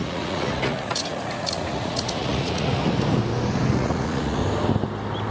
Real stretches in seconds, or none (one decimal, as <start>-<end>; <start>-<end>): 2.8-3.7; 4.4-5.3